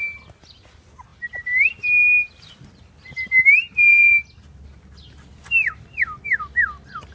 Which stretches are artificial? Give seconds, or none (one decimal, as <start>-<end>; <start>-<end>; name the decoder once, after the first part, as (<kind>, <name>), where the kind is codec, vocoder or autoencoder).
none